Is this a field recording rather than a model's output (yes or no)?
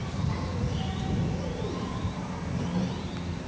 yes